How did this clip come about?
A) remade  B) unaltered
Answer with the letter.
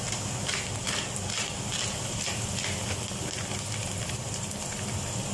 B